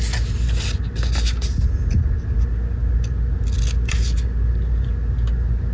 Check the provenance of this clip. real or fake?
real